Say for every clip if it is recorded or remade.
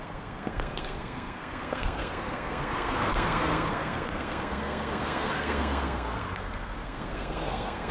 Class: remade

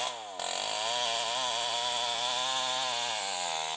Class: recorded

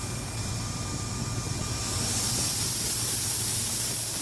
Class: recorded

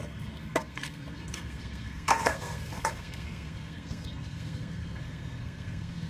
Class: remade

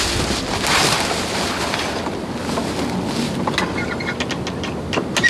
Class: recorded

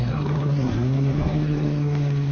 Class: remade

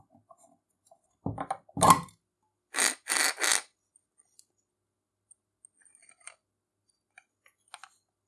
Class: recorded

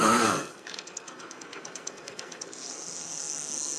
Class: remade